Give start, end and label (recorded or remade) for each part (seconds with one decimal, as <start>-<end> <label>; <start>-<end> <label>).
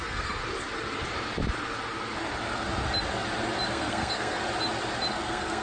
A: 0.0-0.4 remade; 0.4-3.7 recorded; 3.7-4.4 remade; 4.4-5.1 recorded; 5.1-5.6 remade